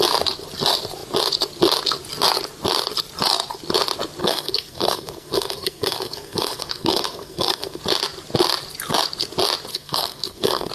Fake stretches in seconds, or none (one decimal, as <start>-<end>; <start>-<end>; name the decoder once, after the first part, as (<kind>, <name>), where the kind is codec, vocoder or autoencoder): 4.2-7.8 (codec, SNAC); 9.7-10.7